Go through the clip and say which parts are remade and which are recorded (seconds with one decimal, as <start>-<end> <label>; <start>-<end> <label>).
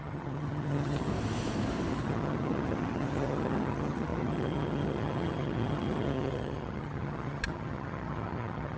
0.0-1.1 remade; 1.1-1.9 recorded; 1.9-8.8 remade